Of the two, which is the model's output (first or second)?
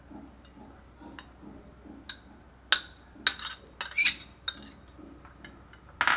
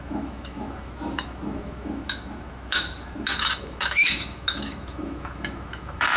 second